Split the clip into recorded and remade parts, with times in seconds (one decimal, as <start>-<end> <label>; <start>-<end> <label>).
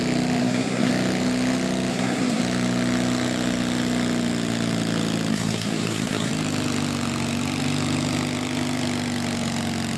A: 0.0-0.4 recorded; 0.4-0.9 remade; 0.9-1.9 recorded; 1.9-2.4 remade; 2.4-5.3 recorded; 5.3-6.3 remade; 6.3-10.0 recorded